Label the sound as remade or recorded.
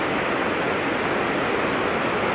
recorded